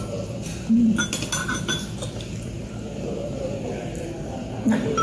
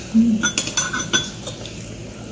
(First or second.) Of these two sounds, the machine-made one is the first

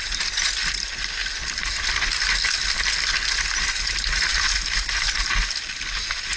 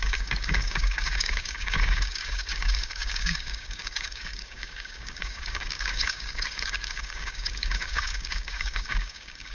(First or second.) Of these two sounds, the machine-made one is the second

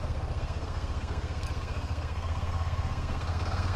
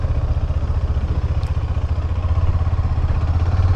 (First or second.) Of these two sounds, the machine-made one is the first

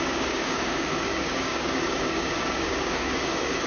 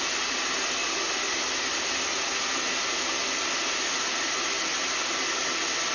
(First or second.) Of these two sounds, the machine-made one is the first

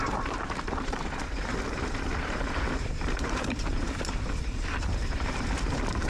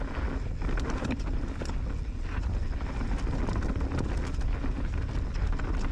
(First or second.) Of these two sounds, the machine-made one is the first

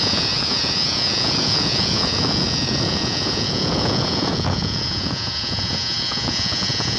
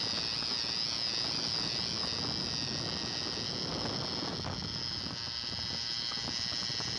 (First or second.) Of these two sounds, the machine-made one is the first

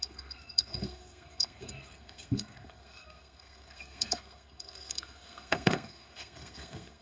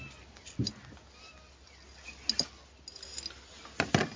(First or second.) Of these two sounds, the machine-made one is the first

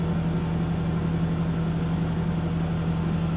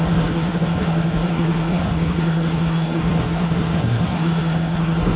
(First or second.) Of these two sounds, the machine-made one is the second